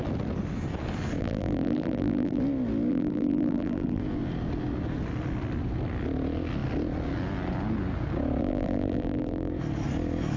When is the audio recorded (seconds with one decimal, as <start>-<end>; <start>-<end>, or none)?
0.0-1.2; 2.4-2.9; 4.0-8.4; 9.5-10.4